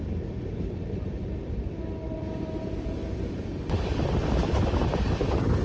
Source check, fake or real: real